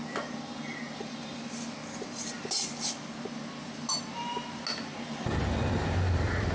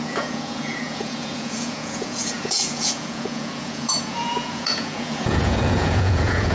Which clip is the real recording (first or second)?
first